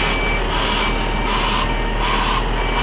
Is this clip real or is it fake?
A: real